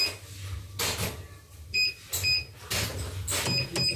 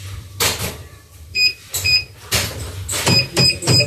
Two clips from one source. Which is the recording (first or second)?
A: first